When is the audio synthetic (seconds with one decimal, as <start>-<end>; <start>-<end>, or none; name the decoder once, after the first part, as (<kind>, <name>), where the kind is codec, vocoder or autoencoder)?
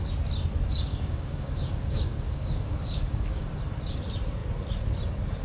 0.9-3.5 (codec, DAC)